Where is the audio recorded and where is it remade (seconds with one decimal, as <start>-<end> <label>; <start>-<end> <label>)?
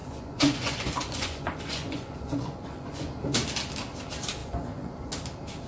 0.0-3.1 remade; 3.1-4.4 recorded; 4.4-4.9 remade; 4.9-5.7 recorded